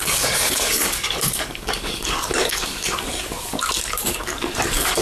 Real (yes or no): no